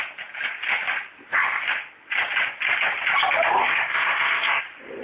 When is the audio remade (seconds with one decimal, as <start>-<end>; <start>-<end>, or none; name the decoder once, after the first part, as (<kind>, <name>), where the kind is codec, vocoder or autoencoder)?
3.6-4.6 (codec, SNAC)